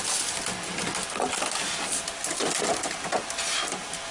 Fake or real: real